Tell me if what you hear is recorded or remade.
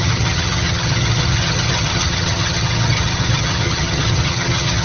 remade